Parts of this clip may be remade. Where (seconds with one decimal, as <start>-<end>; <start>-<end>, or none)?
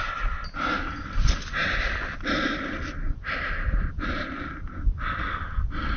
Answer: none